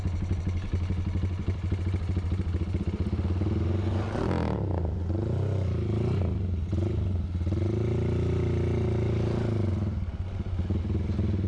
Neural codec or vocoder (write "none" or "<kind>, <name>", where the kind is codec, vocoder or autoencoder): none